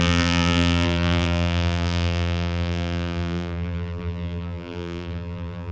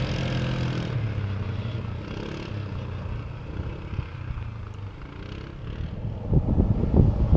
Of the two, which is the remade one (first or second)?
first